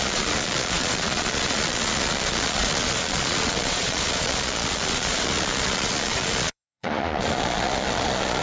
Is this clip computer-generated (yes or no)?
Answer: yes